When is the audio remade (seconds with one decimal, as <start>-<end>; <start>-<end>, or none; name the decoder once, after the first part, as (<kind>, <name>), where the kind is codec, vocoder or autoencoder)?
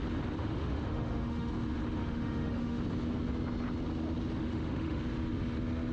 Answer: 0.4-1.5 (autoencoder, DAC-VAE); 2.0-2.8; 4.4-5.0